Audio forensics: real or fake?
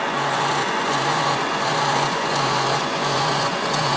fake